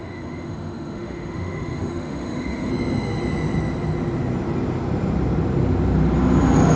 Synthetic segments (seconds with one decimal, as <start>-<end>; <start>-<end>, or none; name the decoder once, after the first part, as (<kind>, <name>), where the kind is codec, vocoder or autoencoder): 0.0-2.7 (autoencoder, DAC-VAE)